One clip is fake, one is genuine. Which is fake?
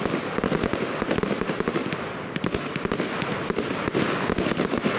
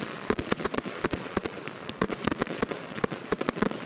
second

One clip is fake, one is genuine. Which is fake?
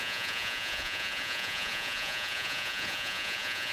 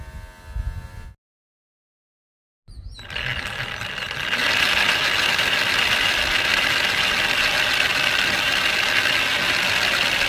first